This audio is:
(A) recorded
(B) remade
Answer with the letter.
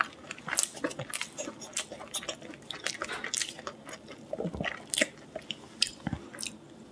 A